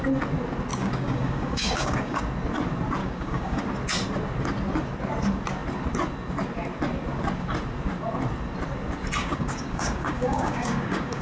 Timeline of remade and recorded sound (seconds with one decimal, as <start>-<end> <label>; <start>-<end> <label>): 0.0-0.7 recorded; 0.7-2.2 remade; 2.2-3.0 recorded; 3.0-3.6 remade; 3.6-9.2 recorded; 9.2-11.2 remade